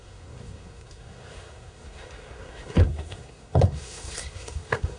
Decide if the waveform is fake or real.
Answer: fake